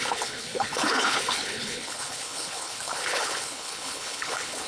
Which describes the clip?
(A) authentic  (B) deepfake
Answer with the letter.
B